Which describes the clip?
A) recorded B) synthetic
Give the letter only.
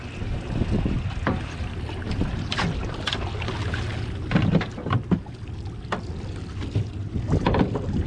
A